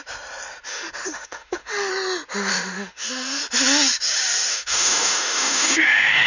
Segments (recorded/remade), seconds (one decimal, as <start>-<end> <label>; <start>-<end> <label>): 0.0-0.7 recorded; 0.7-1.9 remade; 1.9-2.5 recorded; 2.5-3.4 remade; 3.4-4.5 recorded; 4.5-6.3 remade